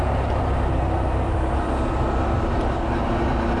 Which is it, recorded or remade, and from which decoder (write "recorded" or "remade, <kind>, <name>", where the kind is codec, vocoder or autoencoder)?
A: recorded